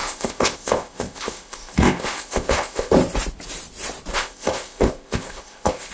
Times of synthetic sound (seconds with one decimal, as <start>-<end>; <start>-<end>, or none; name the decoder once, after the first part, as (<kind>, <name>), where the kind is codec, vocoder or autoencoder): 0.0-2.9 (codec, ZipCodec); 4.1-5.9